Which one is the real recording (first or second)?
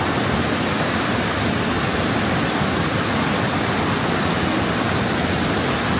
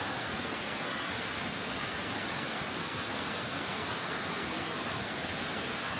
first